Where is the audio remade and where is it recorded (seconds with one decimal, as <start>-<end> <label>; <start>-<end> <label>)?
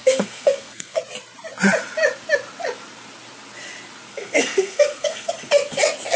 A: 0.0-1.0 remade; 1.0-4.1 recorded; 4.1-5.3 remade; 5.3-6.2 recorded